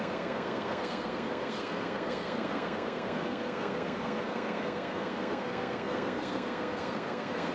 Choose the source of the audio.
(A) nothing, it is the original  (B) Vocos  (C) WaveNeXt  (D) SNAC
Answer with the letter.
D